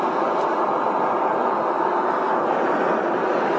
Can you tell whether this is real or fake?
real